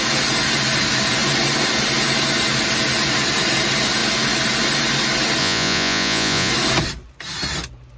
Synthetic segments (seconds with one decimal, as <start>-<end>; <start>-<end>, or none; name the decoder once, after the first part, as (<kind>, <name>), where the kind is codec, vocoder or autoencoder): 5.4-6.5 (vocoder, Vocos)